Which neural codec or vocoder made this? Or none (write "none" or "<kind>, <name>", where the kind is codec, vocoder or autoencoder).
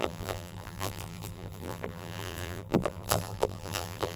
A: vocoder, BigVGAN v2